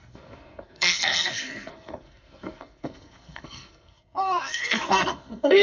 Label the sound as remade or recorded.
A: remade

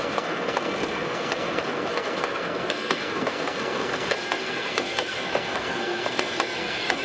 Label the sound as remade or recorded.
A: remade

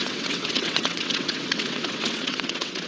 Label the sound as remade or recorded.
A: remade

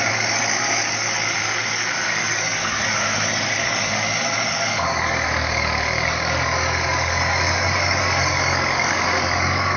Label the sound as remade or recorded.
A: remade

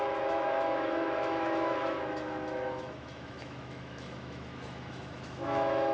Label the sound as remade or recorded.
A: remade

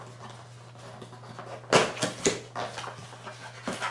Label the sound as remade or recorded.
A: recorded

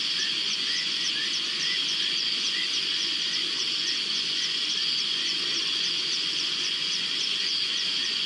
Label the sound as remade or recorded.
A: remade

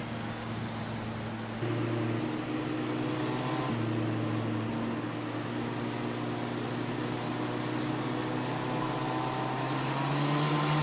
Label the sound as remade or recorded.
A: recorded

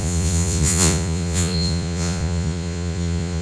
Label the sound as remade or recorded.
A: remade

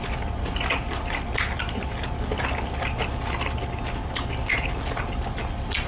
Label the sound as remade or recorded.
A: recorded